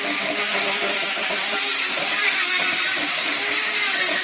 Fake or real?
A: fake